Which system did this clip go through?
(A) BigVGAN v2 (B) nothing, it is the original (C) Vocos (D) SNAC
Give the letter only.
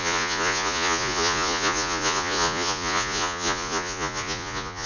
C